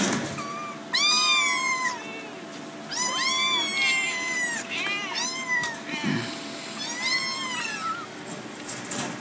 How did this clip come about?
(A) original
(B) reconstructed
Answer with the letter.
A